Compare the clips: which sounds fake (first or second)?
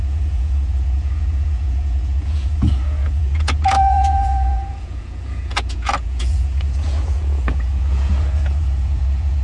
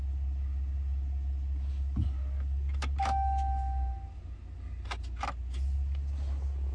first